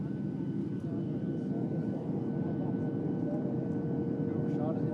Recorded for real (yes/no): yes